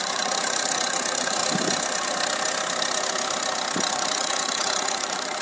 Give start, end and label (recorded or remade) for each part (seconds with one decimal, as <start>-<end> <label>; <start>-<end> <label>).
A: 0.0-1.4 remade; 1.4-3.9 recorded; 3.9-5.4 remade